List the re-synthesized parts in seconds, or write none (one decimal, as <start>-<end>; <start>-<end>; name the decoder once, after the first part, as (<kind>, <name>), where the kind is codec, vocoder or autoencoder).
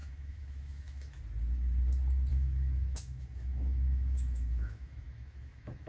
0.0-1.2 (autoencoder, DAC-VAE); 2.3-5.9